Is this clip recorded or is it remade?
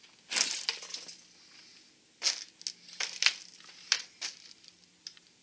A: recorded